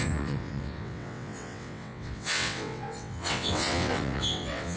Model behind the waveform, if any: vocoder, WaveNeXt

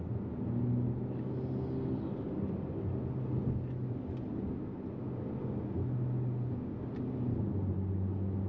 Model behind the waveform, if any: none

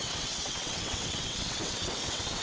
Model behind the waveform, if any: vocoder, WaveNeXt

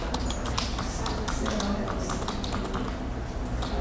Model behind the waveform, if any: none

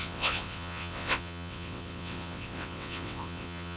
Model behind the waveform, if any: vocoder, WaveNeXt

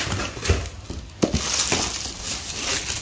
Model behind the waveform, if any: none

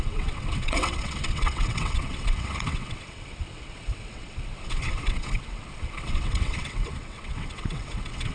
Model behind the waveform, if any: vocoder, WaveNeXt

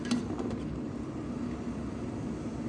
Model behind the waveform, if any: none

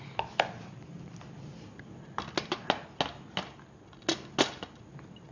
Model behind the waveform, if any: none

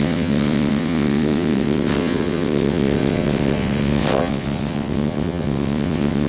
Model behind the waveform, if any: vocoder, WaveNeXt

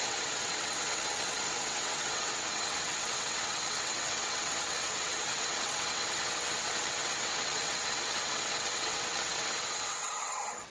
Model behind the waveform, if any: vocoder, WaveNeXt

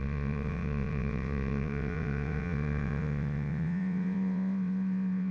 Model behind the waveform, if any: vocoder, WaveNeXt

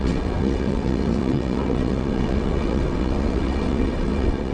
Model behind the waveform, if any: vocoder, WaveNeXt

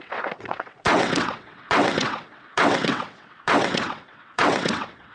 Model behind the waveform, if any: vocoder, WaveNeXt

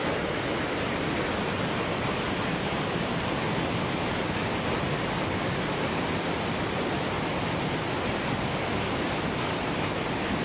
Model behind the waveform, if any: none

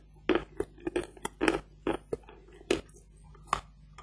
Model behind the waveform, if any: none